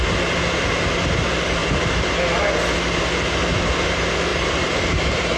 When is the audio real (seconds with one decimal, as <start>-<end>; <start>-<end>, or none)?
0.0-1.6; 2.2-4.3